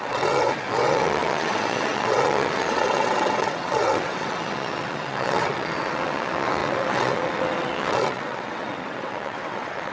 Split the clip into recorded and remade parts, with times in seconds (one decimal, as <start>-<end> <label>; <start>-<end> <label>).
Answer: 0.0-9.9 remade